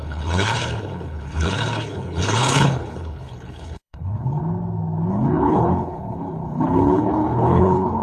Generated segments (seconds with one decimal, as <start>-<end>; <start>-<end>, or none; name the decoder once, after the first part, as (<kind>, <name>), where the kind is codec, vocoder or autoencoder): 0.0-4.4 (codec, HILCodec); 5.1-8.0